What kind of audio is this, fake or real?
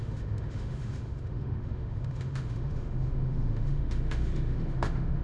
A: fake